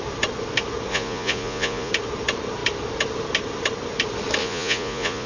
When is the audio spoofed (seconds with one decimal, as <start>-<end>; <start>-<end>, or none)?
0.9-1.9; 4.4-5.3